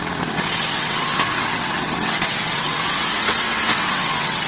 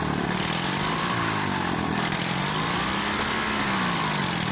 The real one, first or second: second